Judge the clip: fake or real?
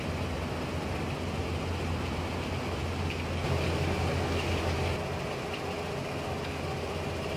real